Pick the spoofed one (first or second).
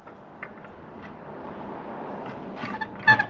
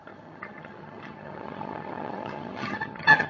second